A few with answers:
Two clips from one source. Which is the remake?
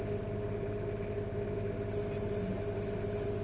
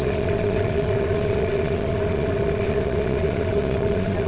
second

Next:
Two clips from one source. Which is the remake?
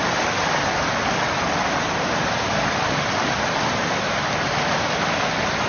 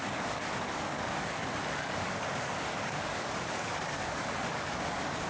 second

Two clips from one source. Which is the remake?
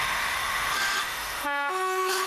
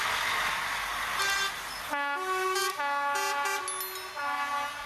first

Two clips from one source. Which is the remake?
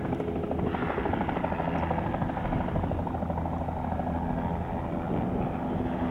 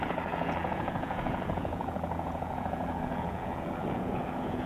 second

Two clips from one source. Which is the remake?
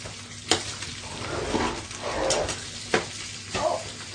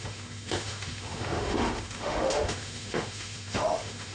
second